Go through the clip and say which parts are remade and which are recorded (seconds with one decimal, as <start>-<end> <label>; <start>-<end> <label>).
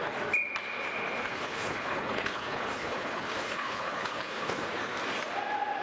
0.0-1.2 recorded; 1.2-4.7 remade; 4.7-5.8 recorded